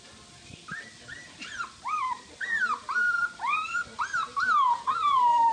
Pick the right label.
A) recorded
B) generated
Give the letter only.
B